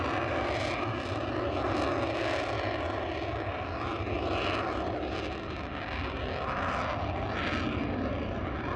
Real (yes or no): yes